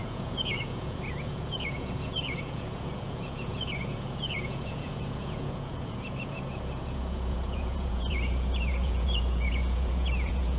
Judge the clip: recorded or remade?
remade